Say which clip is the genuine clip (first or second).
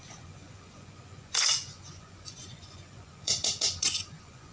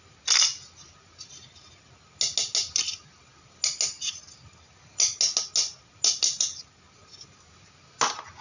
second